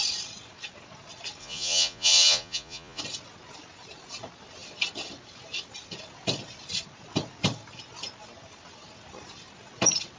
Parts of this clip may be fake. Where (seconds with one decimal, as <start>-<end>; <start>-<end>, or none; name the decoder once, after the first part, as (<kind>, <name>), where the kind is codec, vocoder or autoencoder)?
1.4-3.0 (vocoder, Vocos)